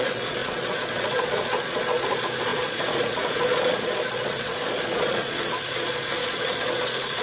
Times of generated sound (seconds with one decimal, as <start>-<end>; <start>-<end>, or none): 0.0-7.2